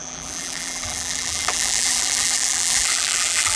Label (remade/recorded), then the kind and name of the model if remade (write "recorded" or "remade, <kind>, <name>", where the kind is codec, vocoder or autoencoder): remade, vocoder, BigVGAN v2